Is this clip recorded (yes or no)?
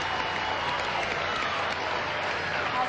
yes